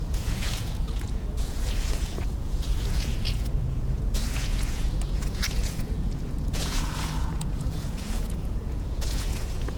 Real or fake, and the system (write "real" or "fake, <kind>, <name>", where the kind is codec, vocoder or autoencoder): fake, vocoder, Vocos